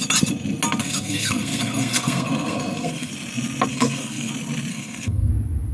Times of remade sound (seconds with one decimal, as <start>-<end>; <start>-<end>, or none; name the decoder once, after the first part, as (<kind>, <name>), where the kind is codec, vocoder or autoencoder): 0.8-3.1 (codec, SNAC); 3.7-4.3; 4.7-5.3